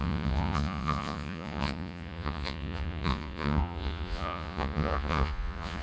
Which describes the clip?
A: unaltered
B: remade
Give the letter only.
B